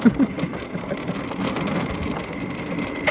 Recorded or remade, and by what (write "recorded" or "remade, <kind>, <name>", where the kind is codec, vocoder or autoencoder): recorded